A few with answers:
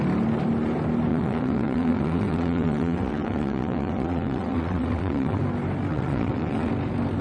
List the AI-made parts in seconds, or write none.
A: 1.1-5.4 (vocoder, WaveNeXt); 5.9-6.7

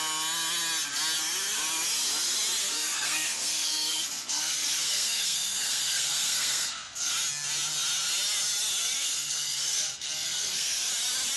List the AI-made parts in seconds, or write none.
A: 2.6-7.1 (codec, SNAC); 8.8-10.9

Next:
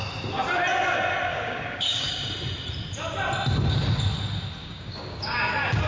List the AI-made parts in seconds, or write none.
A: 1.3-2.1 (codec, DAC); 4.6-5.5

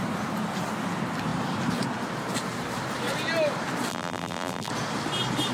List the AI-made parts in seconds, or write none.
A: 3.9-4.7 (vocoder, BigVGAN v2)